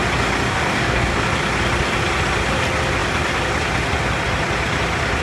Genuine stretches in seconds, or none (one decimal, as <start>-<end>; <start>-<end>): 0.0-0.5; 1.2-5.2